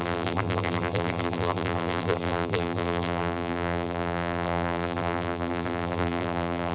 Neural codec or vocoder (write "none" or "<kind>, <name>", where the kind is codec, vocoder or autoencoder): vocoder, BigVGAN v2